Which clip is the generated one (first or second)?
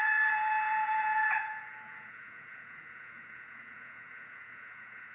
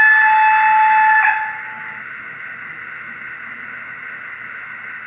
first